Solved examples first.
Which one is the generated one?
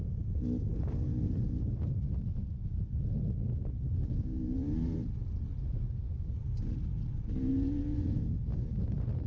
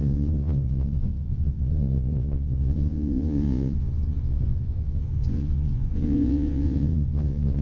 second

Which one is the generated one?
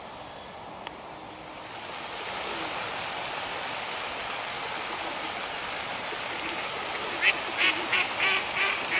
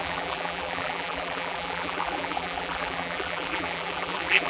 second